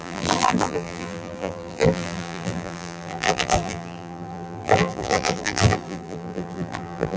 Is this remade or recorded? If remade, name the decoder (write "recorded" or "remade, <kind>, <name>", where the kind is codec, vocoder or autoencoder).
remade, vocoder, BigVGAN v2